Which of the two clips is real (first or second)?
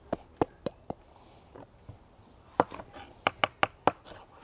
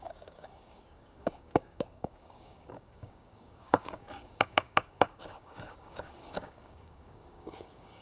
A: first